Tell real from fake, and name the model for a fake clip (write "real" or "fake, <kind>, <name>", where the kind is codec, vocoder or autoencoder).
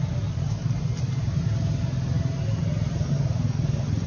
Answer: real